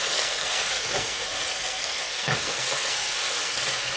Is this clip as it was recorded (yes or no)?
no